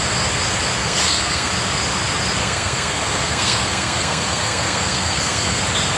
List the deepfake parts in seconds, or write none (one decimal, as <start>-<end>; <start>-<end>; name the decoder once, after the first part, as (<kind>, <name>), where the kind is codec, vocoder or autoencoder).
0.8-1.5 (codec, SNAC); 2.4-5.6